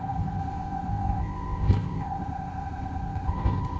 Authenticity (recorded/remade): remade